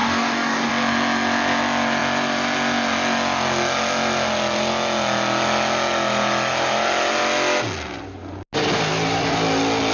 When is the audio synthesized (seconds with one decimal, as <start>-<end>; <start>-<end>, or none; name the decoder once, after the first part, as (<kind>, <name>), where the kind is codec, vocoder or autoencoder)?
0.0-0.7 (codec, DAC)